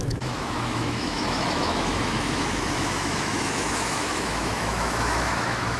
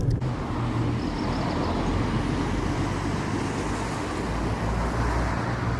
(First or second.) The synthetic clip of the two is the first